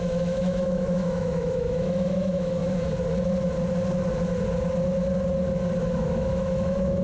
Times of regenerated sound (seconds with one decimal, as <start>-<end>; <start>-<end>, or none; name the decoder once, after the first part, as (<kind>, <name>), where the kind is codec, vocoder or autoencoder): 0.0-2.6 (autoencoder, DAC-VAE); 5.8-7.0